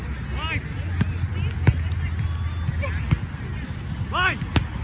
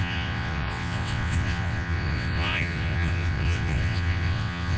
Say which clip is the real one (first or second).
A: first